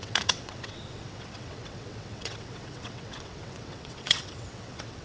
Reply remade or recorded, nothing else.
remade